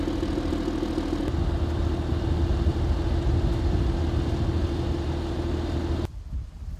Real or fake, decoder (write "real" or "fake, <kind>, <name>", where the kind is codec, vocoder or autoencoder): real